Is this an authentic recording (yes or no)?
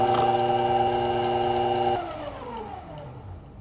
yes